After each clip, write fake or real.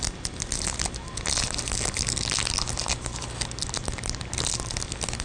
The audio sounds real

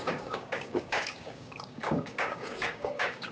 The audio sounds fake